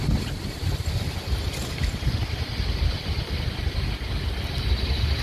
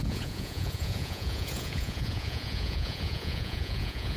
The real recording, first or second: first